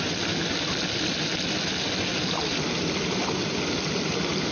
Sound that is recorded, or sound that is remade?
recorded